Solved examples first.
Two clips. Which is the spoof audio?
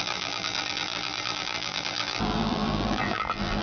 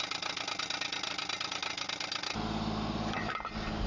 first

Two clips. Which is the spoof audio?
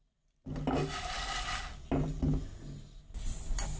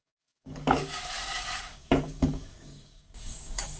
second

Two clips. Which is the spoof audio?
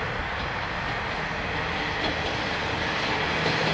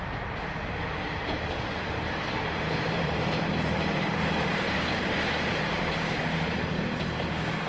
second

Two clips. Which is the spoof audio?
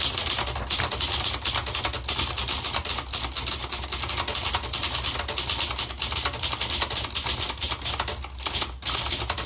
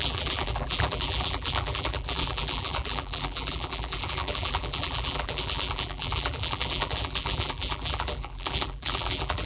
second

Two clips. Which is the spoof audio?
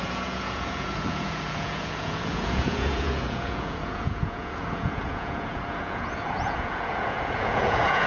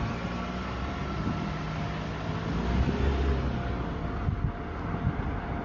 first